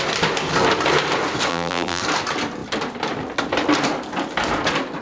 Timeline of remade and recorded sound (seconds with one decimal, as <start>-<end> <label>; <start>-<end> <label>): 0.0-1.5 recorded; 1.5-2.0 remade; 2.0-5.0 recorded